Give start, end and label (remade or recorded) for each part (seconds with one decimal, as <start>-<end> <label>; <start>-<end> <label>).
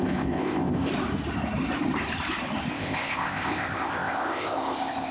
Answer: 0.0-0.9 remade; 0.9-2.7 recorded; 2.7-5.1 remade